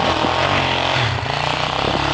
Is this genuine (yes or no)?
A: yes